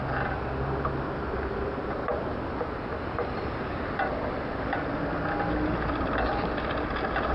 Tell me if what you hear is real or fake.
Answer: real